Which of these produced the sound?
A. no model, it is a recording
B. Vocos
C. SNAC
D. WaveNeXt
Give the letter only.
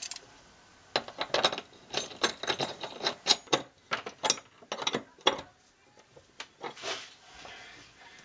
A